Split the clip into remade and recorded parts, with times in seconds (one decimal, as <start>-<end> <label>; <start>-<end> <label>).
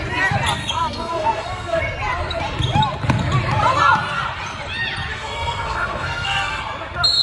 0.0-0.6 recorded; 0.6-1.8 remade; 1.8-5.1 recorded; 5.1-6.6 remade; 6.6-7.2 recorded